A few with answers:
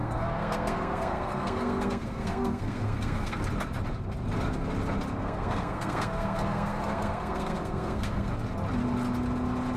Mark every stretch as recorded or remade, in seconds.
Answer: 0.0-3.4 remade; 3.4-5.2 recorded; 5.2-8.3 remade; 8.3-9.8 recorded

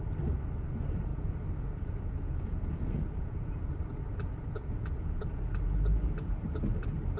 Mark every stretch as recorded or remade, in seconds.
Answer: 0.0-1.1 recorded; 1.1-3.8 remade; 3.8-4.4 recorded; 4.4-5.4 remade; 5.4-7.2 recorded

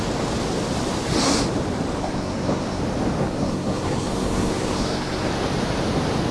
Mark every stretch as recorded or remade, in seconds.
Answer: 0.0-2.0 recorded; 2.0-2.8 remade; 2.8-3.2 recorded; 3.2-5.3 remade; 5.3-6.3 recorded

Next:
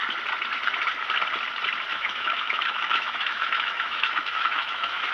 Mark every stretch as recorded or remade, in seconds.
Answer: 0.0-1.9 recorded; 1.9-5.1 remade